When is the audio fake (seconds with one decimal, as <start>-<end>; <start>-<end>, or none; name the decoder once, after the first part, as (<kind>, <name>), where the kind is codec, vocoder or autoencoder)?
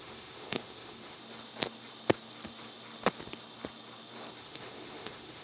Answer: 0.0-1.2 (autoencoder, DAC-VAE); 4.4-5.4